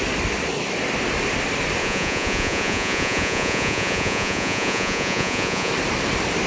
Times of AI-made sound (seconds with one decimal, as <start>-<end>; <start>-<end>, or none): 1.8-5.7